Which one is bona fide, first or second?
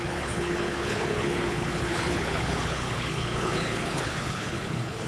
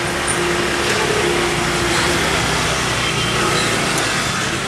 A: second